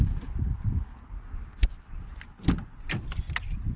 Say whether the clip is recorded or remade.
recorded